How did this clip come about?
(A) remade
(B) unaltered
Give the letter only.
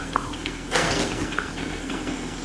A